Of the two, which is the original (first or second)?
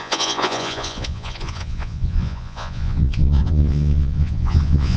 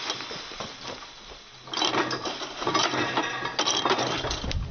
second